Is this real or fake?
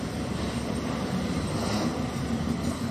real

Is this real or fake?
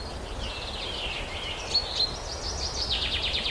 real